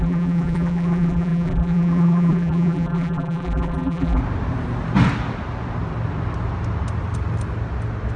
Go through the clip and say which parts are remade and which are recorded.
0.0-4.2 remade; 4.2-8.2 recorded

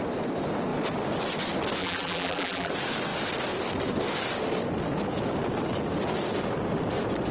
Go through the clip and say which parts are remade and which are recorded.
0.0-1.8 recorded; 1.8-2.7 remade; 2.7-7.3 recorded

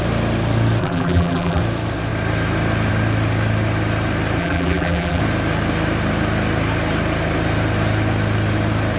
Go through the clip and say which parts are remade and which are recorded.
0.0-0.8 recorded; 0.8-1.6 remade; 1.6-4.4 recorded; 4.4-5.2 remade; 5.2-9.0 recorded